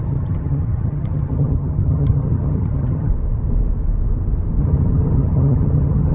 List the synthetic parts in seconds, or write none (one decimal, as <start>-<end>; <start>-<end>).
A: 0.0-3.1; 4.6-6.1